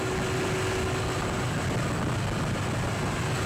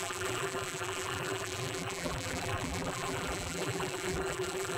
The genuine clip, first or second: first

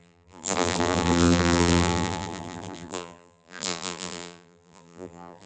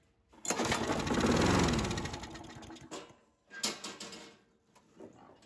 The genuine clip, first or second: second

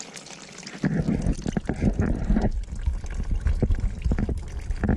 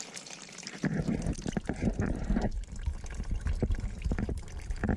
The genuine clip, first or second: first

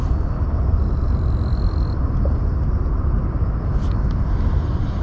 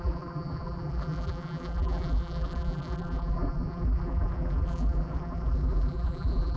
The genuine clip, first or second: first